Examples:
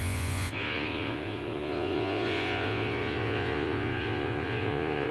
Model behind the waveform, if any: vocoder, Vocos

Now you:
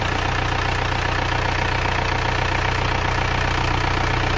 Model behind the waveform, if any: none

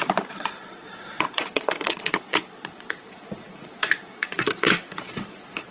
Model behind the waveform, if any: vocoder, Vocos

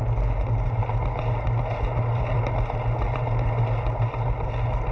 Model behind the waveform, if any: none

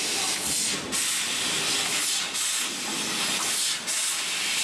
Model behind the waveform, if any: none